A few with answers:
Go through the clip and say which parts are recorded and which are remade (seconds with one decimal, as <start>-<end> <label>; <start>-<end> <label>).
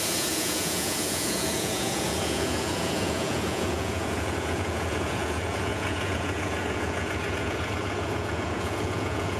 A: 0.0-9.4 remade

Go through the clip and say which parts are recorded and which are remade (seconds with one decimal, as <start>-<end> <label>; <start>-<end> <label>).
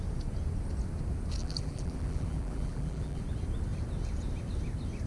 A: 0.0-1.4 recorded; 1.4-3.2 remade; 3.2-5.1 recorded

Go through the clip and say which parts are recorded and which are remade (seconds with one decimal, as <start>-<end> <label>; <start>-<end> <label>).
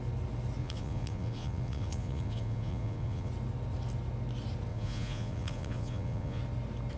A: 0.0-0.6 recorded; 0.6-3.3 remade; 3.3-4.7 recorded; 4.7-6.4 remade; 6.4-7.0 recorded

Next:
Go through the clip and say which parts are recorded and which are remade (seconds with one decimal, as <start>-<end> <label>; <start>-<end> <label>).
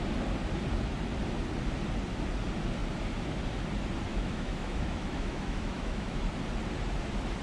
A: 0.0-4.1 recorded; 4.1-6.3 remade; 6.3-7.4 recorded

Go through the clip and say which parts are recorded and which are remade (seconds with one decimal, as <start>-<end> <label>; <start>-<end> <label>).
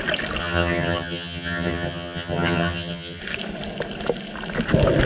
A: 0.0-0.4 recorded; 0.4-3.2 remade; 3.2-5.1 recorded